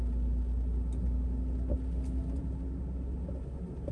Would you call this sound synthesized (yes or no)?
no